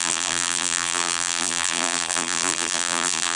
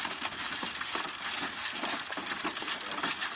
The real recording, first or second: second